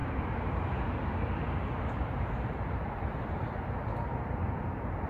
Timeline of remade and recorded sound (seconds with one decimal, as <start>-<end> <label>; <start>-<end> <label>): 0.0-5.1 recorded